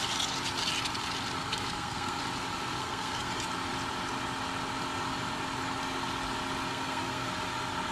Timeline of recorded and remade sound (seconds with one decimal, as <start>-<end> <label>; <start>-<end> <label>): 0.0-1.4 recorded; 1.4-2.2 remade; 2.2-2.8 recorded; 2.8-3.3 remade; 3.3-6.7 recorded; 6.7-7.3 remade; 7.3-7.9 recorded